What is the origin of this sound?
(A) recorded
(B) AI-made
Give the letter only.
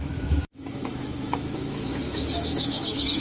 B